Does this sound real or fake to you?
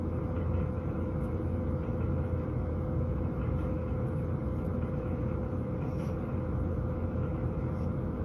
fake